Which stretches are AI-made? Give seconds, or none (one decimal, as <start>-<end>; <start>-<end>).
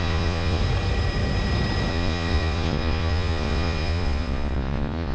0.0-0.6; 1.9-5.1